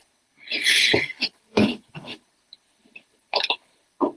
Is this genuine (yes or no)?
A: no